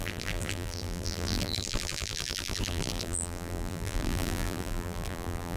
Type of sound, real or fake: fake